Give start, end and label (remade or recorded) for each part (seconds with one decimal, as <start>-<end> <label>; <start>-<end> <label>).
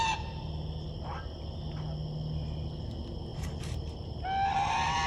0.0-3.3 recorded; 3.3-4.1 remade; 4.1-5.1 recorded